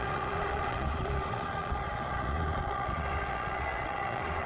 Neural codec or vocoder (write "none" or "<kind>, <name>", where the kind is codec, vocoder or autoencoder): vocoder, Vocos